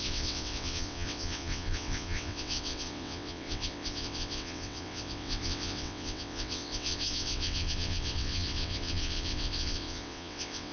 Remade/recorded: remade